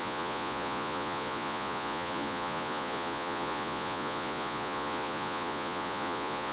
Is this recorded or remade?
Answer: remade